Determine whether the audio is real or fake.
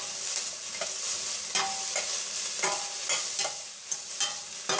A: real